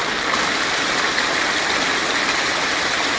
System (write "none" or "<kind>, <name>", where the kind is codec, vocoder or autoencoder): none